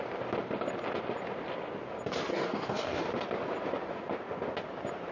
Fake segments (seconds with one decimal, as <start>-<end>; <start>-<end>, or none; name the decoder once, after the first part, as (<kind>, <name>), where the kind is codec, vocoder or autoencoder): 2.3-3.0 (codec, DAC)